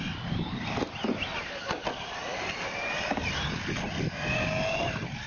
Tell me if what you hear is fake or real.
real